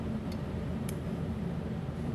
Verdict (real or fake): fake